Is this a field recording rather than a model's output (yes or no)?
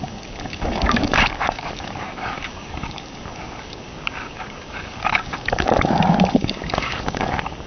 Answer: no